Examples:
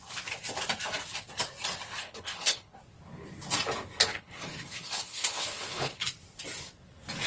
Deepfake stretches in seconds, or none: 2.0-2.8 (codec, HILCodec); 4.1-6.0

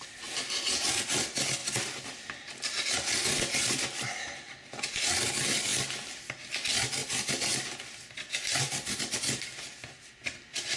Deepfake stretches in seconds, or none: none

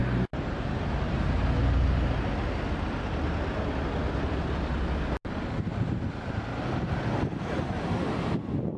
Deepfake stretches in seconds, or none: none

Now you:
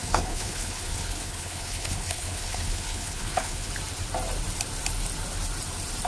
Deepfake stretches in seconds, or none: 0.0-3.7 (codec, HILCodec)

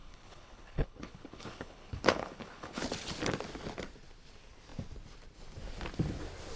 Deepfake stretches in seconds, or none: 0.0-2.8 (codec, HILCodec)

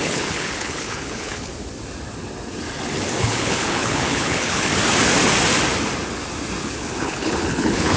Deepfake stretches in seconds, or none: 0.0-1.5 (codec, HILCodec); 3.2-4.7; 6.6-8.0